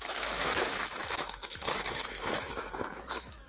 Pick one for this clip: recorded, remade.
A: remade